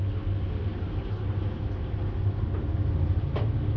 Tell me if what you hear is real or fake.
real